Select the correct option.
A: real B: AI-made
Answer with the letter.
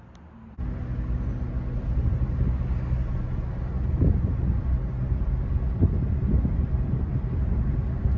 A